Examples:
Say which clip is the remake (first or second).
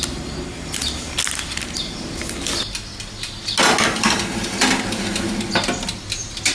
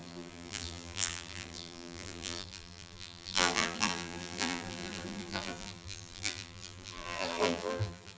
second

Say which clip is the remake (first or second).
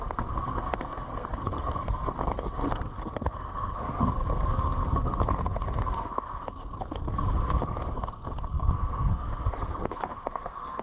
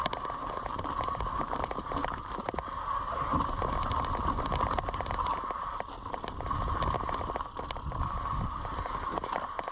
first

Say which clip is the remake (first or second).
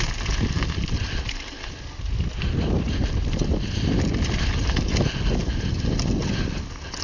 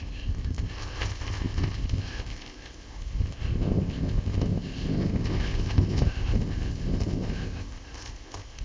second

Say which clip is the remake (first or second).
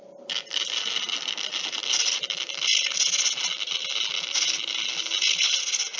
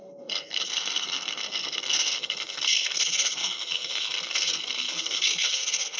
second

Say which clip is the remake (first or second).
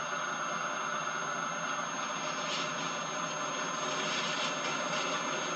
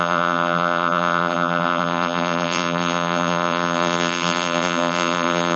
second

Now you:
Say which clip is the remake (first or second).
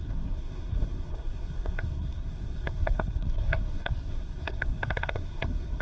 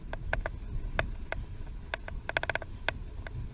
first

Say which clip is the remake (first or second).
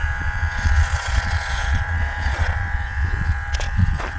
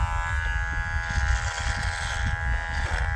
first